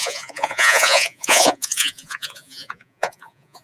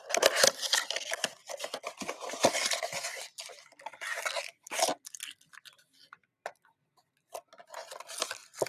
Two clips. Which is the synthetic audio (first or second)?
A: first